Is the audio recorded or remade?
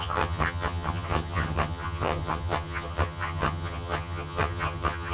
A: remade